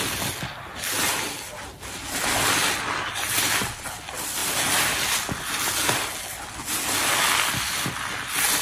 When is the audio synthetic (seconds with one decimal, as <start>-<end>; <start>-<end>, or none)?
none